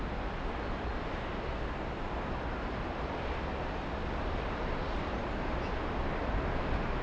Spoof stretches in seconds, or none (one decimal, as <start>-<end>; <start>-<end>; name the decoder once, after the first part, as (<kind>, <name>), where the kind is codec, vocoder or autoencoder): none